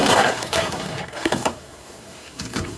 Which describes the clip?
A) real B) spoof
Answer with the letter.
B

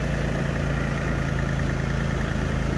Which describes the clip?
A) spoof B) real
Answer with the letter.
B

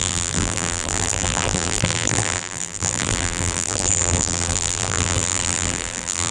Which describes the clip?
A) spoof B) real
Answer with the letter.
A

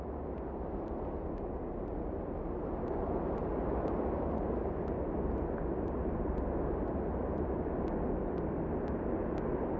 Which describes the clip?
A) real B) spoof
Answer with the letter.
A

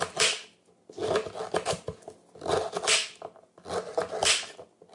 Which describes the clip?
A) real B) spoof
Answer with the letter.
A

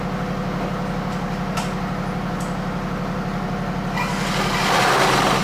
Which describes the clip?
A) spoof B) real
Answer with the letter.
B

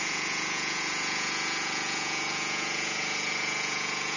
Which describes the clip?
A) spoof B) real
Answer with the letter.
A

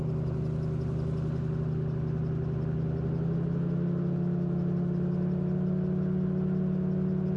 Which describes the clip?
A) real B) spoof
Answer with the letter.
A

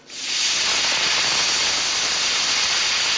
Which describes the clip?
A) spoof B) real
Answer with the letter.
B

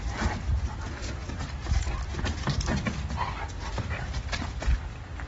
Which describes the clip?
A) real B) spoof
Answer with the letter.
A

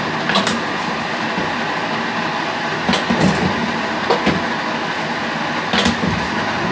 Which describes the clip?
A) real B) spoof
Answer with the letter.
A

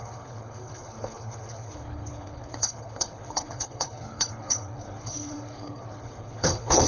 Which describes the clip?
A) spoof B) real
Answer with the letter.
A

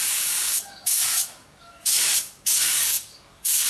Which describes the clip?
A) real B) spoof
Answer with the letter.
B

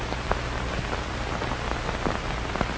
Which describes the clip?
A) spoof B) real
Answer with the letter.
B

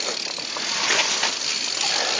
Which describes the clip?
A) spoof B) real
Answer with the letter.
B